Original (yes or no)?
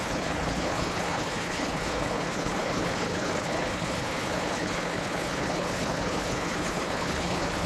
no